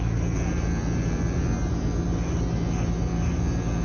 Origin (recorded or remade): recorded